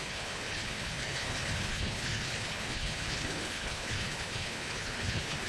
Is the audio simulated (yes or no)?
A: yes